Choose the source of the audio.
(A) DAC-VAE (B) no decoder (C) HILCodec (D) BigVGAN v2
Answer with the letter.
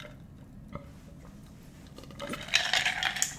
B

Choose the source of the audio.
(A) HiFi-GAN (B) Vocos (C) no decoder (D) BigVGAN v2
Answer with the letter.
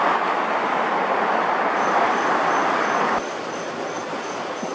C